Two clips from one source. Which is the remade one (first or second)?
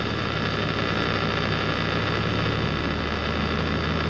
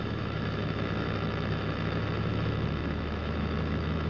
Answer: second